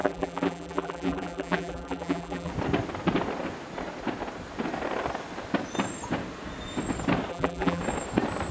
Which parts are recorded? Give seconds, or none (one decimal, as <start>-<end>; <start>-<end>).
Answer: 2.5-7.3; 7.8-8.5